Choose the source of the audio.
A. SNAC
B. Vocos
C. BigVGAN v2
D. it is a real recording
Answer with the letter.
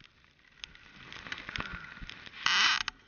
D